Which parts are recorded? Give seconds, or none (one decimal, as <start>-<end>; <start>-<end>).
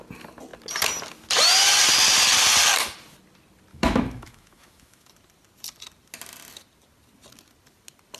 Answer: 0.0-3.7; 5.1-8.2